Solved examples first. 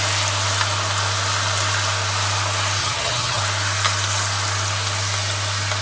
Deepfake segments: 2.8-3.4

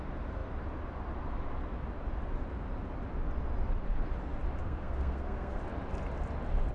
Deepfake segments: 4.6-5.6

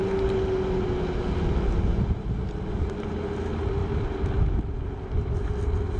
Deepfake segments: none